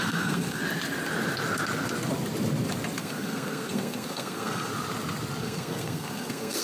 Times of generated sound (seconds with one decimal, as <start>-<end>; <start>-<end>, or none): 0.0-0.6; 3.0-4.7; 5.4-6.6